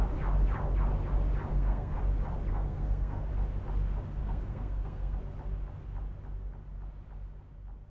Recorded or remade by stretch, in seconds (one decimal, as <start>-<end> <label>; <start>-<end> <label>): 0.0-1.5 recorded; 1.5-2.0 remade; 2.0-2.5 recorded; 2.5-3.3 remade; 3.3-4.2 recorded; 4.2-5.2 remade; 5.2-7.9 recorded